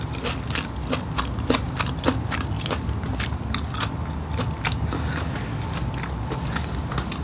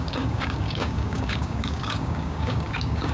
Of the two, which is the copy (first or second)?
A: second